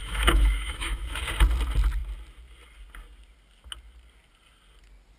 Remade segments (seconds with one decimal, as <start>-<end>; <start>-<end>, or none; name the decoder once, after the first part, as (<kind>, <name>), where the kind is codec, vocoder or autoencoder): 0.0-1.2 (autoencoder, DAC-VAE)